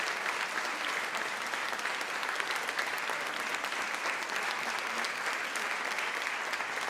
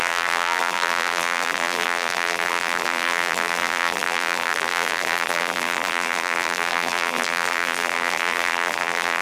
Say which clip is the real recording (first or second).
first